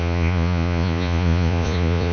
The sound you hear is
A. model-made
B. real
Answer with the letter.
A